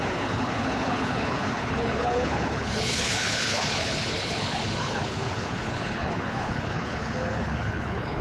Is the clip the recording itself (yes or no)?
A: no